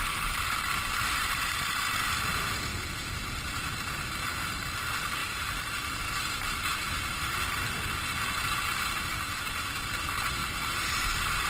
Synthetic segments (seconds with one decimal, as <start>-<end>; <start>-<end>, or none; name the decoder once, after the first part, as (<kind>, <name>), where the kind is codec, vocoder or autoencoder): 0.0-2.7 (vocoder, BigVGAN v2); 4.4-11.5

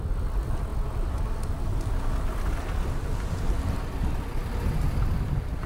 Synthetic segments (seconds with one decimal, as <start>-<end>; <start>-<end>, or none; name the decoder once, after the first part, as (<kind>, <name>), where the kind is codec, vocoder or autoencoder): 4.4-5.3 (vocoder, BigVGAN v2)

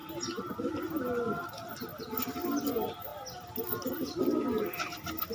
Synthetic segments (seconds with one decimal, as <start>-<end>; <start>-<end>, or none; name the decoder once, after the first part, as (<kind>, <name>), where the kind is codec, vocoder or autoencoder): none

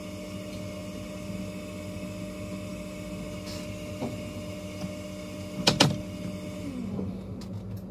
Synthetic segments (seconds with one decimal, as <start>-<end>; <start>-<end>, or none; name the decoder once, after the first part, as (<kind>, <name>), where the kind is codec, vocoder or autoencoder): none